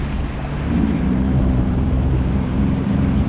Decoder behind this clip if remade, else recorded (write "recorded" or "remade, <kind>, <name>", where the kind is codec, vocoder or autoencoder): remade, vocoder, BigVGAN v2